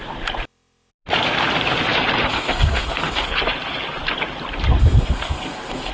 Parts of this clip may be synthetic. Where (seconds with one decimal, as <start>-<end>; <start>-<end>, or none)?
2.3-3.3; 4.8-5.9